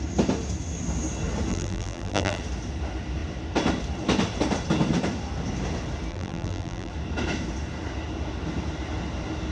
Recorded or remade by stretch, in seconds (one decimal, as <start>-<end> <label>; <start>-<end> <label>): 0.0-1.5 recorded; 1.5-2.4 remade; 2.4-6.1 recorded; 6.1-6.9 remade; 6.9-9.5 recorded